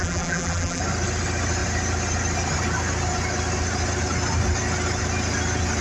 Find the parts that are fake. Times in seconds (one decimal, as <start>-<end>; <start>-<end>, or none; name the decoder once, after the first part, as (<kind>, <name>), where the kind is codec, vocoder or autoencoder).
0.0-0.8 (vocoder, BigVGAN v2)